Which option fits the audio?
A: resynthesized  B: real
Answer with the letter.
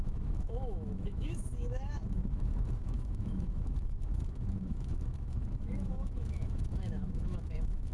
A